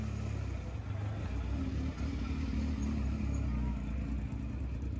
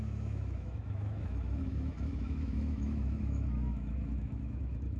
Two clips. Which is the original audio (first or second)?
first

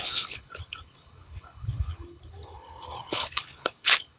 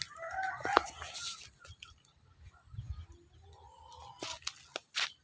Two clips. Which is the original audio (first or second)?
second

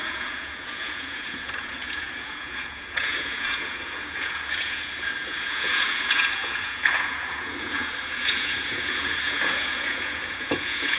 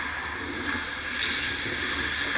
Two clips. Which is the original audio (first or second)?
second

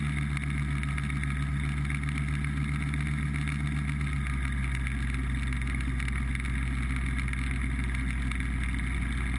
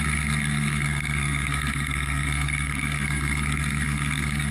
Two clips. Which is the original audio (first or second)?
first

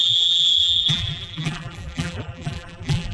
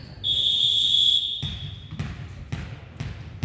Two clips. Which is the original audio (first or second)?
second